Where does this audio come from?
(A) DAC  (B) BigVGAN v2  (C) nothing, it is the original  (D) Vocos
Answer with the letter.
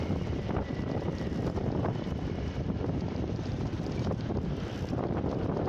B